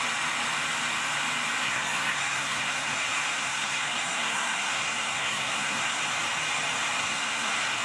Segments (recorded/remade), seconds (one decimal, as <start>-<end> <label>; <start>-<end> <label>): 0.0-1.6 recorded; 1.6-6.0 remade; 6.0-7.0 recorded; 7.0-7.8 remade